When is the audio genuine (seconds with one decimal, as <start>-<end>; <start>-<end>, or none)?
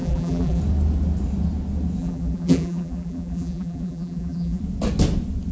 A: 0.6-2.0; 4.6-5.5